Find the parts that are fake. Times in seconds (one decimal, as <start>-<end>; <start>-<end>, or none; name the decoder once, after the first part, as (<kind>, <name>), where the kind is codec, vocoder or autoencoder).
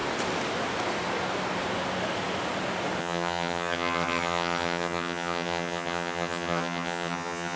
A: 3.0-7.6 (vocoder, HiFi-GAN)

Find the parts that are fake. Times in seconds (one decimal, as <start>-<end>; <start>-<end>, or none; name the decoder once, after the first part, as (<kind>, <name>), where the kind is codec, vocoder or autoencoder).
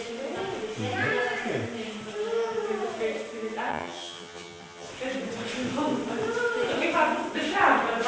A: 3.7-4.9 (vocoder, HiFi-GAN)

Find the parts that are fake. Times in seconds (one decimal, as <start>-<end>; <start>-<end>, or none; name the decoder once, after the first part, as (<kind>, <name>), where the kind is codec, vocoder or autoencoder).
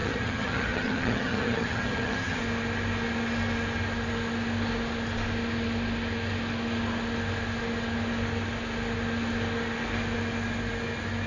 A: 0.0-2.4 (vocoder, HiFi-GAN)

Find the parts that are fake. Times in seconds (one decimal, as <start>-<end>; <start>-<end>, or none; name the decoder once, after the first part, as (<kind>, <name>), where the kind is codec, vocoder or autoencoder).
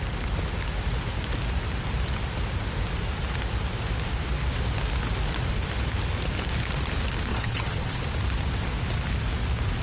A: 7.3-8.0 (vocoder, HiFi-GAN)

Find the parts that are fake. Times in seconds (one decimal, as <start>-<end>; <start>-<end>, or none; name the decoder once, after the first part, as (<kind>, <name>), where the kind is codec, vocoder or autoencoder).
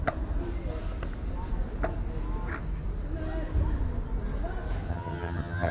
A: 4.9-5.7 (vocoder, HiFi-GAN)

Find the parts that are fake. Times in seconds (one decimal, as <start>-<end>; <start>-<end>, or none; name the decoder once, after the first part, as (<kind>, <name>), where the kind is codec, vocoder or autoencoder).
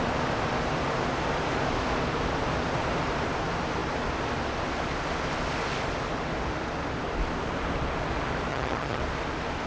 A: 8.5-9.0 (vocoder, HiFi-GAN)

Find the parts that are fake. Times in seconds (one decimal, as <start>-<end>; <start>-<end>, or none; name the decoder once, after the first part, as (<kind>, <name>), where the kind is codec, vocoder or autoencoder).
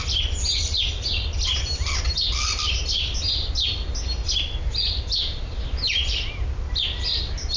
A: none